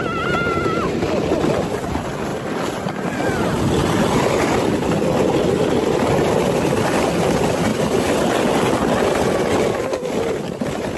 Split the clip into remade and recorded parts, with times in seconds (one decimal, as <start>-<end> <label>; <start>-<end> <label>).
0.0-2.3 recorded; 2.3-6.9 remade; 6.9-11.0 recorded